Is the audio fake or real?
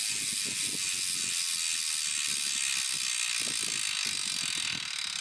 real